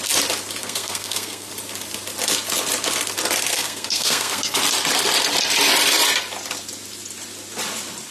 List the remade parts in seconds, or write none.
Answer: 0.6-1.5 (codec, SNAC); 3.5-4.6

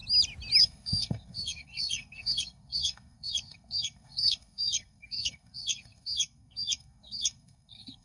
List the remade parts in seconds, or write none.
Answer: 0.6-8.0 (codec, SNAC)